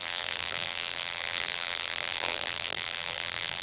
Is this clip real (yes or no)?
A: no